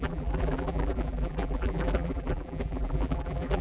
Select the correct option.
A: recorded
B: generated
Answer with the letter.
B